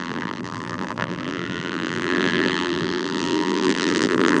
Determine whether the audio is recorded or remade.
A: remade